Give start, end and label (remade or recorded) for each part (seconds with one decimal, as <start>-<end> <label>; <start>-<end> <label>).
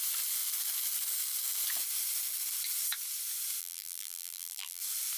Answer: 0.0-3.6 recorded; 3.6-4.8 remade; 4.8-5.2 recorded